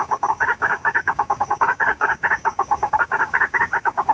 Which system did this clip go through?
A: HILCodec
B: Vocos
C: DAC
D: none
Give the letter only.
C